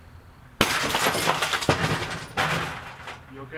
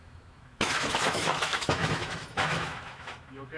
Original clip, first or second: first